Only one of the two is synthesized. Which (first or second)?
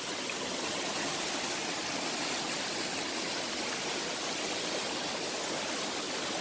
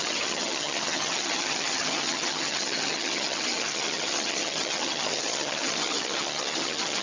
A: second